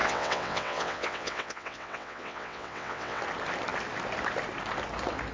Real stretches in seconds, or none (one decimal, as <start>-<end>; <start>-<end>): 3.2-5.3

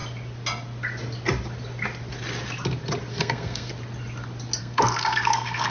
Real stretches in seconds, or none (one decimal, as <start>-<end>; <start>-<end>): 0.0-3.1; 3.7-4.6

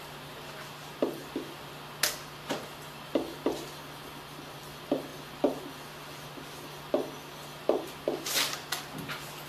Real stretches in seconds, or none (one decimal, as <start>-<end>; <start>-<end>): 0.0-9.5

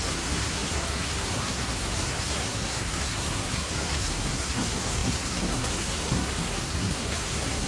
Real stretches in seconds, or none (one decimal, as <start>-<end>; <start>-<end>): none

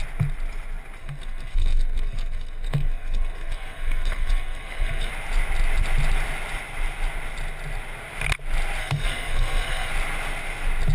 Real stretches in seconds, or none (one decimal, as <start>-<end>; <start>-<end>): 0.0-1.0; 5.1-8.8; 9.9-10.9

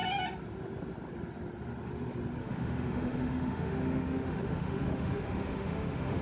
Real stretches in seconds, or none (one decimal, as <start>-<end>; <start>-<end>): 0.0-2.4

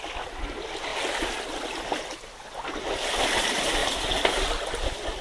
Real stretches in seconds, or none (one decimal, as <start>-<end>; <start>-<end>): 0.0-5.2

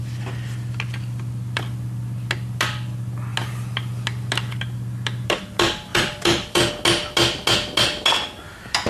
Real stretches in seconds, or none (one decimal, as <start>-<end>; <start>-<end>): 0.0-5.9; 6.7-8.9